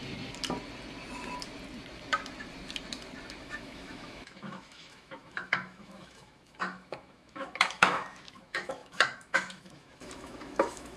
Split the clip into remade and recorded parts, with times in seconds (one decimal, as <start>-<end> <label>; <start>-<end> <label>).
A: 0.0-3.4 recorded; 3.4-11.0 remade